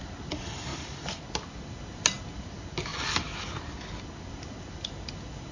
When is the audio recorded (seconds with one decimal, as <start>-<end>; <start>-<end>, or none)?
0.0-5.5